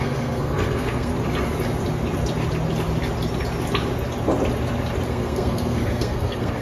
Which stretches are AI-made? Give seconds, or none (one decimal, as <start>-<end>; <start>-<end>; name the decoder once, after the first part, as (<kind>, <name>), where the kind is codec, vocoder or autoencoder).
0.0-1.1 (codec, SNAC); 5.1-6.6